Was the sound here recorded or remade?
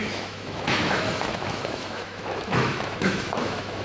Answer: remade